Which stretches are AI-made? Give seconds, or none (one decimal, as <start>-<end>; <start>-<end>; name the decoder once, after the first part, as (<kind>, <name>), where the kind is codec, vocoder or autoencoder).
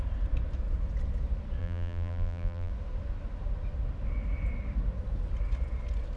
1.6-2.7 (vocoder, BigVGAN v2)